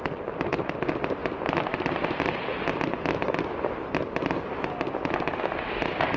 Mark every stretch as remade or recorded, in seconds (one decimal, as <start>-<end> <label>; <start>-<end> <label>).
0.0-0.5 remade; 0.5-1.6 recorded; 1.6-2.5 remade; 2.5-6.2 recorded